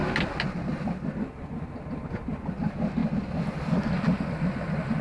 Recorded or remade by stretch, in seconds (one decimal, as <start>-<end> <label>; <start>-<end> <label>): 0.0-5.0 recorded